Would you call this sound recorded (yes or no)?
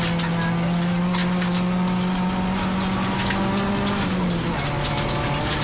yes